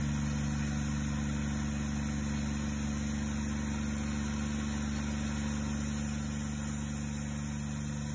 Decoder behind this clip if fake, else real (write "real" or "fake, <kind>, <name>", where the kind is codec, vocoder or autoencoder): real